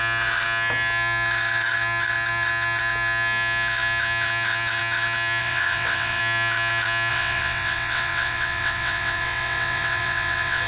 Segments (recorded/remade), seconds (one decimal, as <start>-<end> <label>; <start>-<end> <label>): 0.0-5.4 recorded; 5.4-6.2 remade; 6.2-7.1 recorded; 7.1-10.7 remade

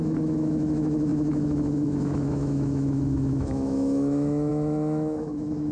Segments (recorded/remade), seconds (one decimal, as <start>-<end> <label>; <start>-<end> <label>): 0.0-5.7 remade